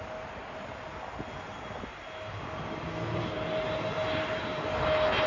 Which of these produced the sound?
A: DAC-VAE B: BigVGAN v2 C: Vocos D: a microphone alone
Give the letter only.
D